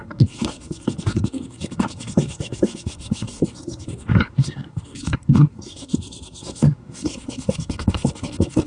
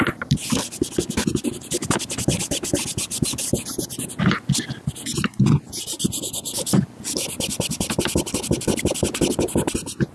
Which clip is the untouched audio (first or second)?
second